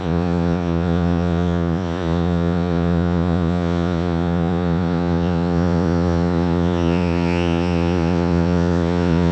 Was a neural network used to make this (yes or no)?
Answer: yes